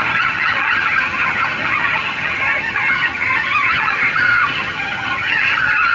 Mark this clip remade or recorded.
remade